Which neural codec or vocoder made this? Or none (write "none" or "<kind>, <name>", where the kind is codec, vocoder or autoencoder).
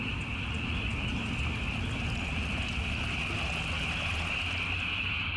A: none